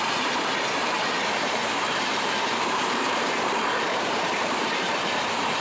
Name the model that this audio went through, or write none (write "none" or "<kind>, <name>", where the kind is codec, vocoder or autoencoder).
vocoder, BigVGAN v2